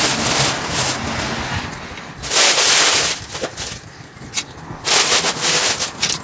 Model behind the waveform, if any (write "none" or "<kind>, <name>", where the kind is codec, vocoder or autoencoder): none